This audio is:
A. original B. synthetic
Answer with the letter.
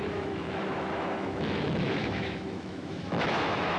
B